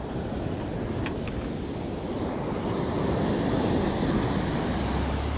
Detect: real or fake real